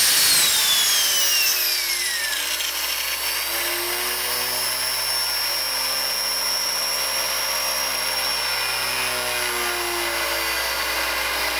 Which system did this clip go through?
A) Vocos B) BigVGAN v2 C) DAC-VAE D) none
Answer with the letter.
D